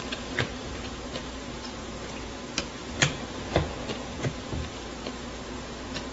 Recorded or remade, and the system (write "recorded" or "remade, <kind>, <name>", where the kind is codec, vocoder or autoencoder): recorded